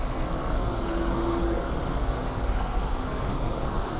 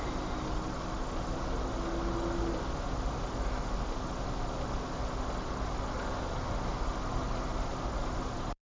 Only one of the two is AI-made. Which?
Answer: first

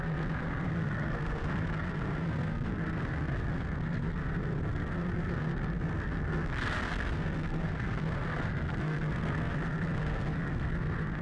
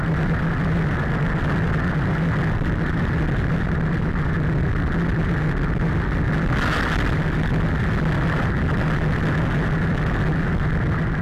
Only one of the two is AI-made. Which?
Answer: first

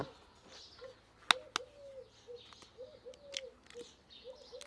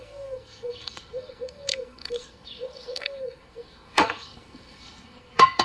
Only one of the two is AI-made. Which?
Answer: second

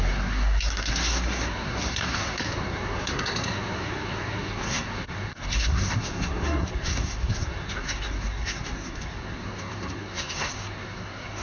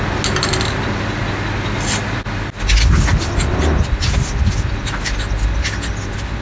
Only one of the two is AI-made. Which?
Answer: first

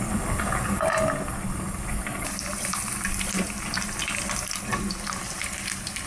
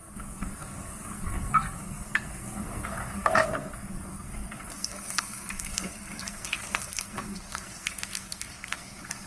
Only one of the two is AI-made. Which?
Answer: second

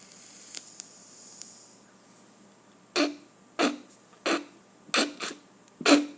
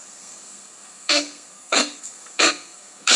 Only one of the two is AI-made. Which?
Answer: second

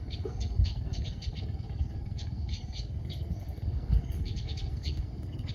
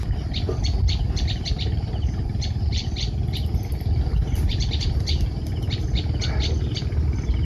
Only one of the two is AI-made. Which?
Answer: first